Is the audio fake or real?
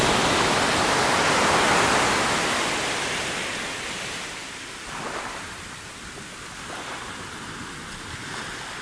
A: real